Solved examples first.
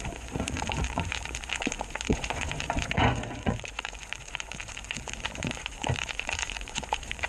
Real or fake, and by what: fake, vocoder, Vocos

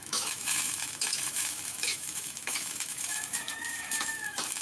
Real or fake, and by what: fake, autoencoder, DAC-VAE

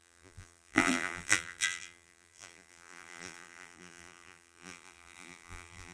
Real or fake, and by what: fake, vocoder, BigVGAN v2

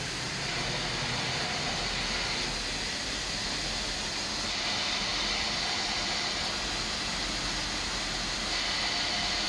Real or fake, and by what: real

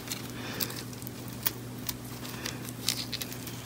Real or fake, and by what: real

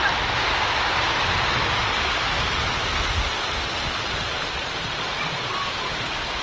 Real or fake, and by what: real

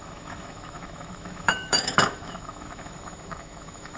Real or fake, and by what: fake, autoencoder, DAC-VAE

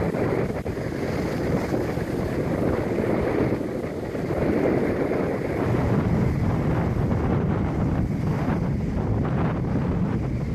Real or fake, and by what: real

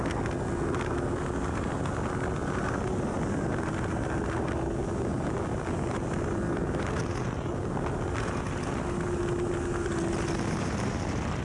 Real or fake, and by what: real